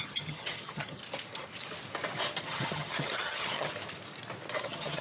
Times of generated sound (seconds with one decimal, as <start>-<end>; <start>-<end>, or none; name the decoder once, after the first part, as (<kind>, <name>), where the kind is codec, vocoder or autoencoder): 0.0-1.0 (vocoder, HiFi-GAN); 2.4-3.7; 4.6-5.0